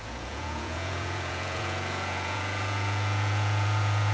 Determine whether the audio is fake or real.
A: fake